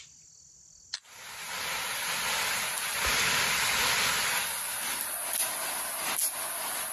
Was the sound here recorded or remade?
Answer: recorded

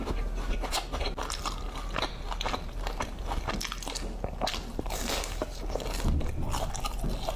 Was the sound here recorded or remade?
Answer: recorded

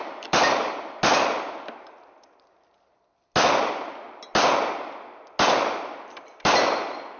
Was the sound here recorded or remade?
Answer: recorded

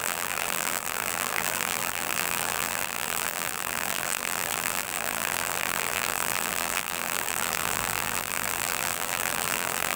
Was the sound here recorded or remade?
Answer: remade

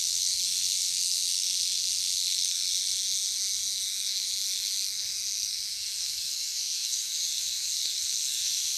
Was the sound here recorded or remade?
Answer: remade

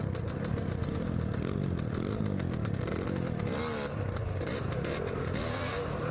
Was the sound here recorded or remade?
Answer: recorded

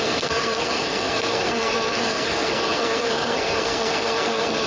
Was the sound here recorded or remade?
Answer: remade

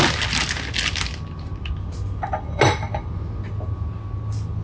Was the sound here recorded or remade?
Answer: recorded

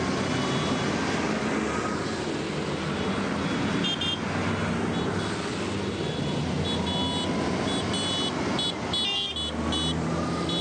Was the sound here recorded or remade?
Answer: recorded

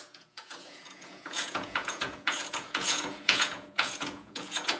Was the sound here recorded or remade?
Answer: remade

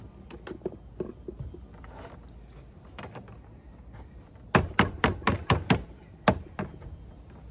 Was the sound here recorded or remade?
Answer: recorded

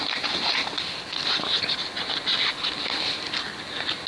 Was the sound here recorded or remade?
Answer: recorded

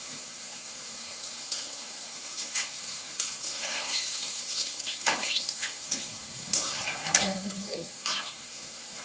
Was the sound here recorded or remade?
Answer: remade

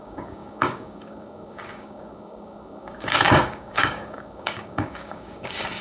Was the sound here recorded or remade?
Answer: remade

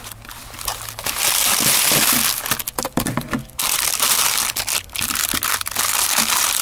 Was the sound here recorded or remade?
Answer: recorded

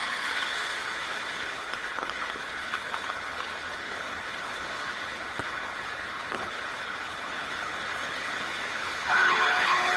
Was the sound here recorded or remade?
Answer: remade